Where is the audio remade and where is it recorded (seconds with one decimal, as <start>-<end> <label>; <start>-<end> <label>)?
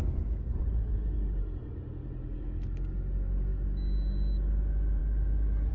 0.0-5.7 recorded